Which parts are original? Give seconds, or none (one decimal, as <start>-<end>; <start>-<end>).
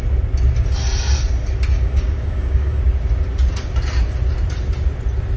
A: 0.0-1.7; 2.8-5.4